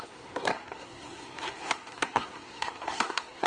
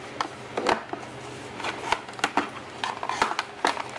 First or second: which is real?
second